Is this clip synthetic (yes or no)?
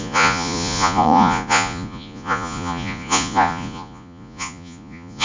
yes